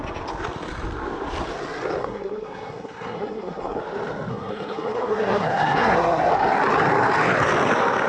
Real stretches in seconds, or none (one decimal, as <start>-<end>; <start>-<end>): 0.0-2.0; 3.8-4.3; 6.3-8.1